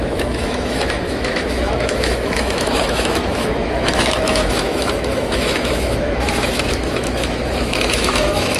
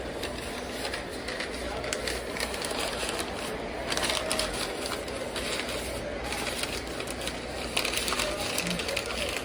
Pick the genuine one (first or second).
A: second